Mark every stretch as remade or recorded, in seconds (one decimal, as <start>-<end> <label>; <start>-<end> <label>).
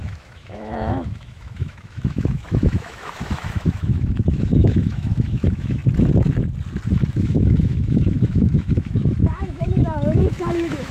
0.0-5.8 remade; 5.8-7.1 recorded; 7.1-10.9 remade